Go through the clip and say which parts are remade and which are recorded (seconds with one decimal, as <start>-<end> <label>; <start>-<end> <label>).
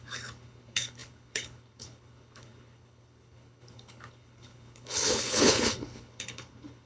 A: 0.0-6.9 remade